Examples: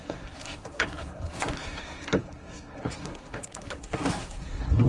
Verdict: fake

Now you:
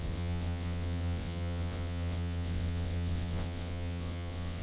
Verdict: fake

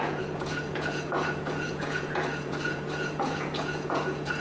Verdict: fake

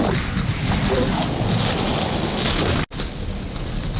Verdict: real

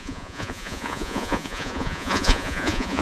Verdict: fake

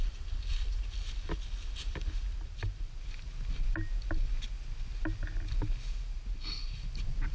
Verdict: real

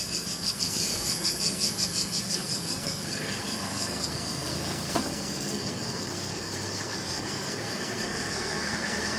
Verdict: fake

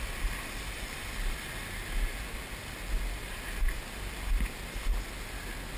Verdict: real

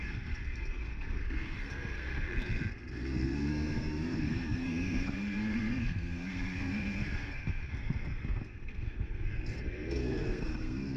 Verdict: fake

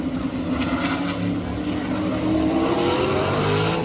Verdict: real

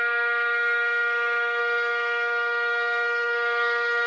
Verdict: fake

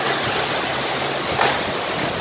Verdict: real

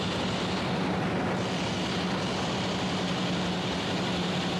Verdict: real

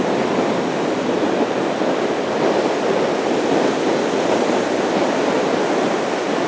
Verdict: real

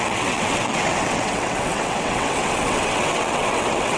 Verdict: fake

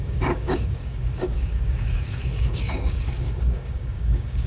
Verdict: fake